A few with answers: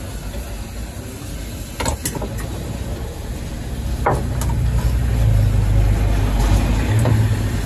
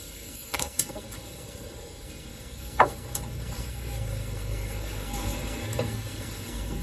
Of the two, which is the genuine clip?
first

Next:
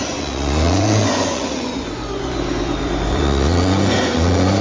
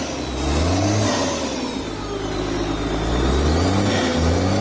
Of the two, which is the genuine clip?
second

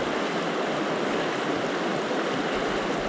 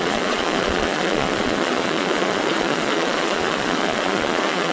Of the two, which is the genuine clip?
first